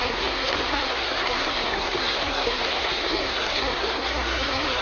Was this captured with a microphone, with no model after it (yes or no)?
no